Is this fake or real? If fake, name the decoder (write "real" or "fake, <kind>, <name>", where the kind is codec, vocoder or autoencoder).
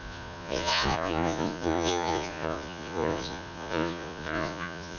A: fake, vocoder, Vocos